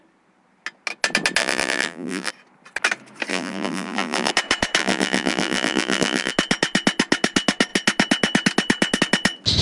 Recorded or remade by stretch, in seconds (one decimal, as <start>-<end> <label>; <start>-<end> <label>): 0.0-1.4 recorded; 1.4-2.3 remade; 2.3-3.3 recorded; 3.3-4.3 remade; 4.3-4.8 recorded; 4.8-6.3 remade; 6.3-9.6 recorded